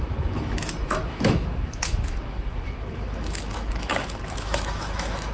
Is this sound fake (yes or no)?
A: yes